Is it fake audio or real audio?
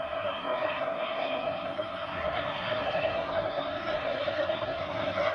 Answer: fake